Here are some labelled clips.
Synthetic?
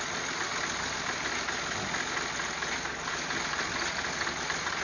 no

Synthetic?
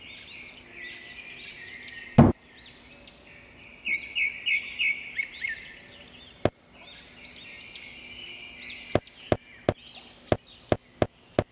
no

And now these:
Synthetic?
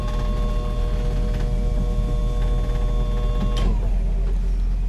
no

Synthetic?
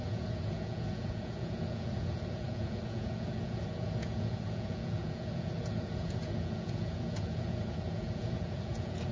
yes